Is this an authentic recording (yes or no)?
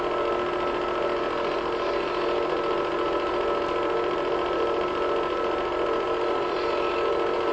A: yes